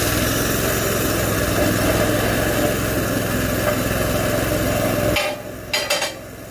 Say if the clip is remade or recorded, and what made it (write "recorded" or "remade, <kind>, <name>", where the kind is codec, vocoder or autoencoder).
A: recorded